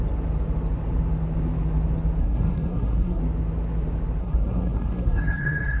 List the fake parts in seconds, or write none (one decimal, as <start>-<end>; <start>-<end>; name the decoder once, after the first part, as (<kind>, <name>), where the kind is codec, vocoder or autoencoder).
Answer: 2.2-3.2 (codec, SNAC); 4.2-5.8